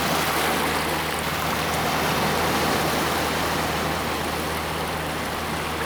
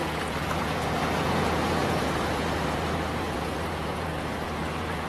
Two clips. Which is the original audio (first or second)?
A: first